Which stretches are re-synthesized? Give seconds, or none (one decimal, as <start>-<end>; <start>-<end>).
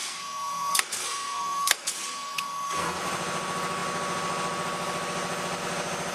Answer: 0.0-3.0